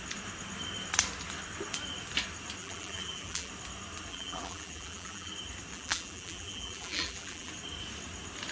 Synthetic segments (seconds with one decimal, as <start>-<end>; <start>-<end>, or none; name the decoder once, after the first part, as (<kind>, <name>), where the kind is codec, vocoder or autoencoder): 2.6-3.5 (vocoder, BigVGAN v2); 4.1-5.3; 5.7-7.5